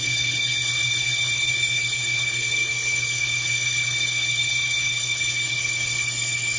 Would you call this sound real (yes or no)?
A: no